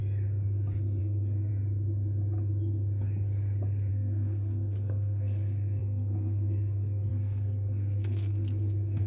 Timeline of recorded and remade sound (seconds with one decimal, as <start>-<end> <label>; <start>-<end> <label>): 0.0-1.0 recorded; 1.0-1.5 remade; 1.5-3.9 recorded; 3.9-9.1 remade